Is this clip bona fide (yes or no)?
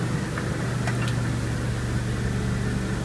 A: yes